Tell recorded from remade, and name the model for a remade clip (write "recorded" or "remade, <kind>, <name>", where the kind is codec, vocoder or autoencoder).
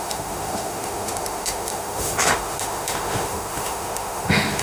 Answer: remade, autoencoder, DAC-VAE